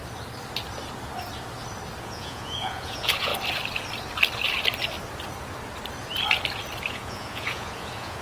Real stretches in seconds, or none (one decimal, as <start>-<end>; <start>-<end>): 0.0-2.0; 3.3-6.9